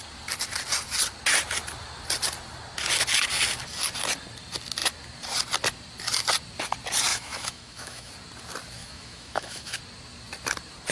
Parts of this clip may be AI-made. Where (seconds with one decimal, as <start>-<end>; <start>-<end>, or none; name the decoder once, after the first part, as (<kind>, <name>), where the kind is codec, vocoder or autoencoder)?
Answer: 7.1-8.1 (autoencoder, DAC-VAE); 8.8-9.8